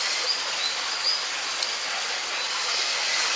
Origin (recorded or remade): recorded